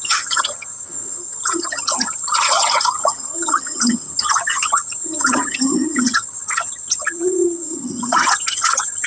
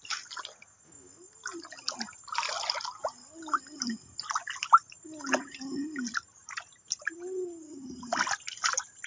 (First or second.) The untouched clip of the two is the second